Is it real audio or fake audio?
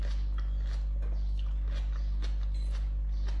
real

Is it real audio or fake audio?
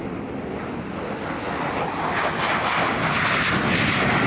real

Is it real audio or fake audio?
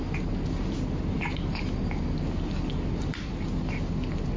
real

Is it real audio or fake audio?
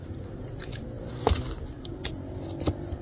real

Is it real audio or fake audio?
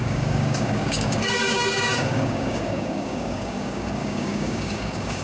fake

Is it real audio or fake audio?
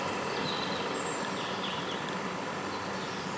real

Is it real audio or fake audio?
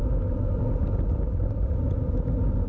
real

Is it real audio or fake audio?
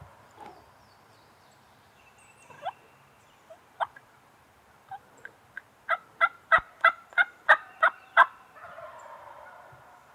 fake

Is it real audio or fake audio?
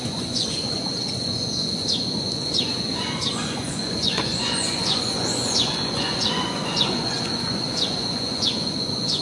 fake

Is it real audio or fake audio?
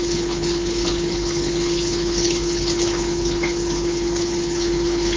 fake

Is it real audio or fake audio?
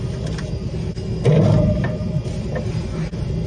real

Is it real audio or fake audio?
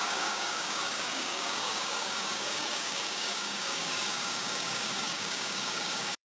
fake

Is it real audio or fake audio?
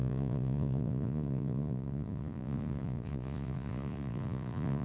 fake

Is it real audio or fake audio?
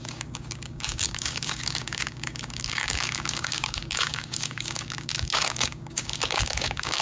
fake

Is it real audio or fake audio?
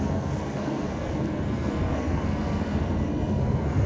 fake